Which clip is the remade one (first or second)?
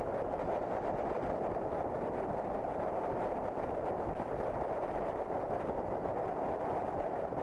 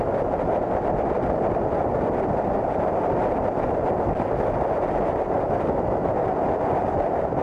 first